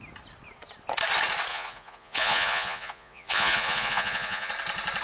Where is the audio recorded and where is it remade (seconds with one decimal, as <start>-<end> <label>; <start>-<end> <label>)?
0.0-1.5 recorded; 1.5-4.5 remade; 4.5-5.0 recorded